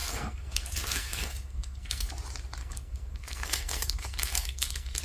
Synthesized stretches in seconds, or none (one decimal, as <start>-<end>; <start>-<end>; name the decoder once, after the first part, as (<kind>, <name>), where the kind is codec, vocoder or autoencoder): 0.0-2.1 (codec, SNAC); 2.6-5.0